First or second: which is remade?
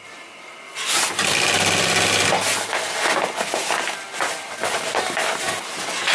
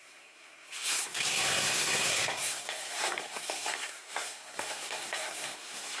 second